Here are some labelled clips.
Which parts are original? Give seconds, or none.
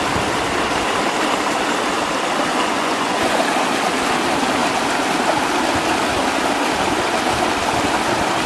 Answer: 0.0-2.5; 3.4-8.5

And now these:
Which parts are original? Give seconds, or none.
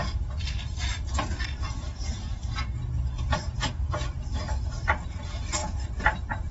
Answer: 0.0-5.6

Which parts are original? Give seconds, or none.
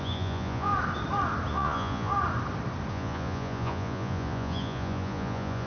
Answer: 0.7-1.5; 2.1-2.9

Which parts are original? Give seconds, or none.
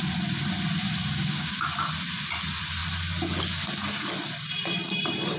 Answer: 0.0-1.0; 1.6-5.4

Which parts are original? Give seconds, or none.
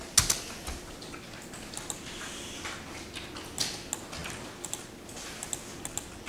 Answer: 0.0-6.3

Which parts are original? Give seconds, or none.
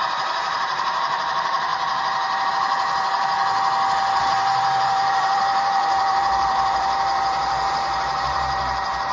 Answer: 3.4-4.2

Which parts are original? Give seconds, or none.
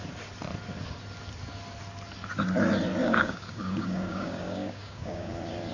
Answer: 0.0-3.0; 5.3-5.7